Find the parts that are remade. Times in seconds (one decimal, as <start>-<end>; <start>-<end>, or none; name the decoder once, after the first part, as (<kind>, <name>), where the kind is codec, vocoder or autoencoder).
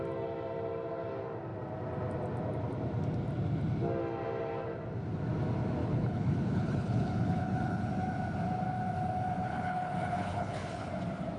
5.8-7.9 (codec, HILCodec); 9.4-10.9